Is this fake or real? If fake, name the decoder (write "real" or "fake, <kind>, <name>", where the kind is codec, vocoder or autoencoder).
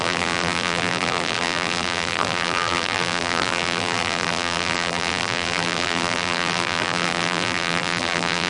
fake, vocoder, BigVGAN v2